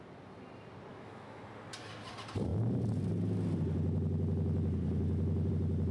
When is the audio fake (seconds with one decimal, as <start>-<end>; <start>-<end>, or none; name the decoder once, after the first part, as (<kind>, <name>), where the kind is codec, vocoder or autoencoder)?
0.9-1.4 (autoencoder, DAC-VAE)